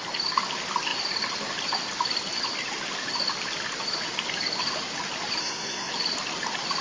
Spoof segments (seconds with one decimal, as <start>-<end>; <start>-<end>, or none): 5.4-5.9

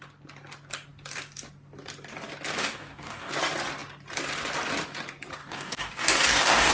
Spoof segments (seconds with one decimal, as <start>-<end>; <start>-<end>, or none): 2.6-3.3; 5.4-6.7

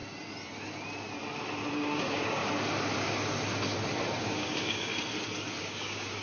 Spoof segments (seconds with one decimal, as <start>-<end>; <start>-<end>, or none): 1.7-2.4; 4.2-4.9; 5.6-6.2

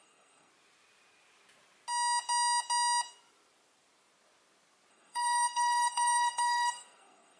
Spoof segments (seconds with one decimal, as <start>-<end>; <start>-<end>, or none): 0.0-0.5; 4.9-7.4